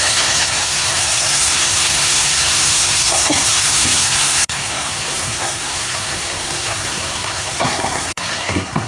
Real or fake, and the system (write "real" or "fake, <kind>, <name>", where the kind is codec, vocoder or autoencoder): fake, codec, SNAC